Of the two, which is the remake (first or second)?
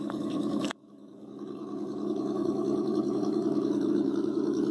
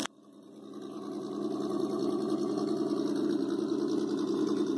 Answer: first